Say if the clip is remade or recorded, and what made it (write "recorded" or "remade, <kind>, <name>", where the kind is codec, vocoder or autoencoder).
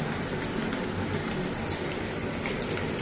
recorded